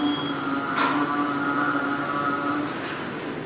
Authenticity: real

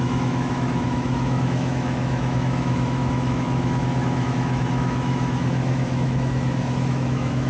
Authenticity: fake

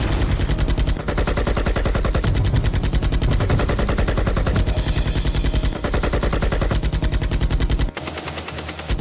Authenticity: real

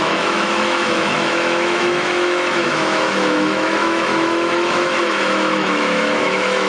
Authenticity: fake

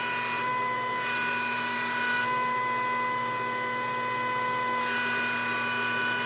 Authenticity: real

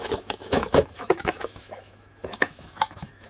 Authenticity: fake